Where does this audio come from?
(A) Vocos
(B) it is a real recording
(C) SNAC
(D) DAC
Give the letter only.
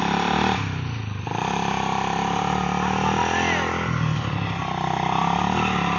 B